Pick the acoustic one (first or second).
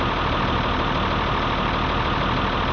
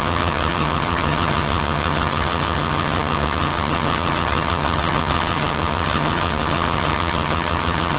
first